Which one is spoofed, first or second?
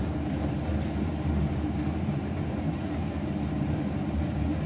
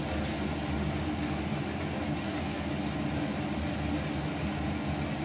first